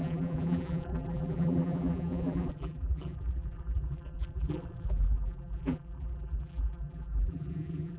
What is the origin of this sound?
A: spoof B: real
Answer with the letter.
A